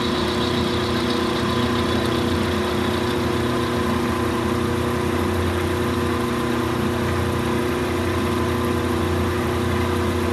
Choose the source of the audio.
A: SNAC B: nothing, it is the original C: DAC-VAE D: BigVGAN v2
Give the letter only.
B